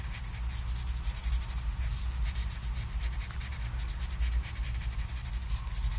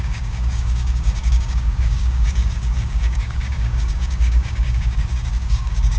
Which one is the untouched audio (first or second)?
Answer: first